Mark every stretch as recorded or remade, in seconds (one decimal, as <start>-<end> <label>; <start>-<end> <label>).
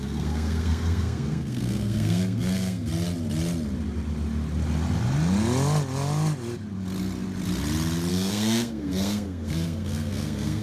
0.0-2.9 remade; 2.9-8.1 recorded; 8.1-10.6 remade